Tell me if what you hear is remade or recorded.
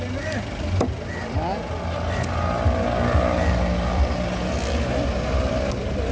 recorded